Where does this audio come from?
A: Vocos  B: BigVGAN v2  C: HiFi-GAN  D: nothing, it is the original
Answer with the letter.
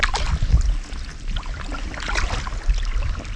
D